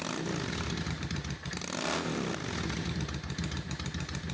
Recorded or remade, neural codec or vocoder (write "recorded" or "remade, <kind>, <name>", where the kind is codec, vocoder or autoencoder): recorded